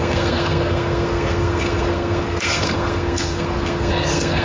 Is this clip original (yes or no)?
no